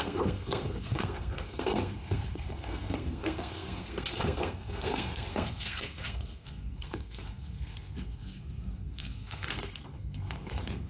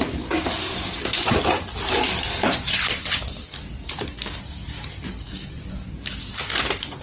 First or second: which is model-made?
first